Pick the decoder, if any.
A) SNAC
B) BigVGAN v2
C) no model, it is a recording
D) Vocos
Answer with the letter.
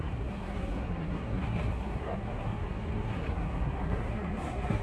A